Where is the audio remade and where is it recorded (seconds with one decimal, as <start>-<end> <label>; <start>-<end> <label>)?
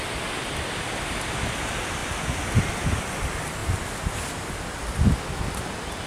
0.0-6.1 recorded